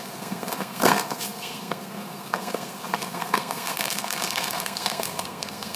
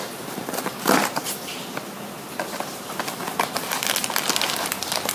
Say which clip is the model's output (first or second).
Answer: first